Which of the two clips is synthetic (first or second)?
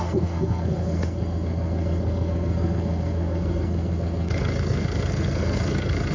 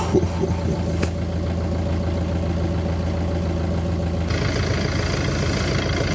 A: first